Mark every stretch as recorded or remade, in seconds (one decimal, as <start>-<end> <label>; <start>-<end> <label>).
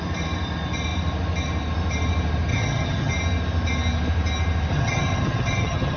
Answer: 0.0-2.5 recorded; 2.5-3.1 remade; 3.1-4.7 recorded; 4.7-6.0 remade